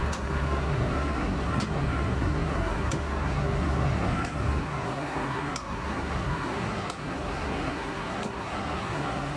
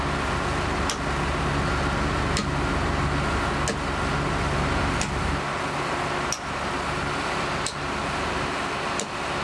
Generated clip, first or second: first